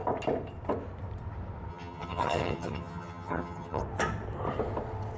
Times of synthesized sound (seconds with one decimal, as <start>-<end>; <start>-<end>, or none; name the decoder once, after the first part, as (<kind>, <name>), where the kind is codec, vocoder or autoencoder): 1.7-3.8 (vocoder, HiFi-GAN)